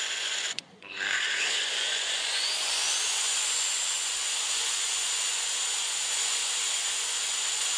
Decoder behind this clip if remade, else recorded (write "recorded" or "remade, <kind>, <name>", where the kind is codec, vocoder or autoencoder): remade, vocoder, Vocos